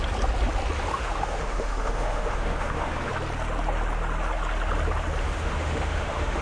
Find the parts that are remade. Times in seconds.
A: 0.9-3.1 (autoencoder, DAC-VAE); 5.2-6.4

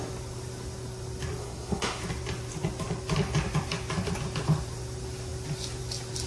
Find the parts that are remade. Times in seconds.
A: 1.4-2.0 (codec, SNAC)

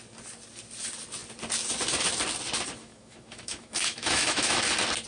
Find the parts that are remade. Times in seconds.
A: 2.8-4.6 (autoencoder, DAC-VAE)